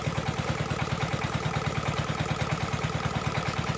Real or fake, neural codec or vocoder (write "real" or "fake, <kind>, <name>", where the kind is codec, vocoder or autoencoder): real